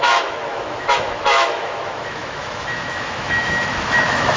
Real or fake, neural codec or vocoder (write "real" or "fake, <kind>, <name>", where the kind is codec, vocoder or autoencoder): fake, autoencoder, DAC-VAE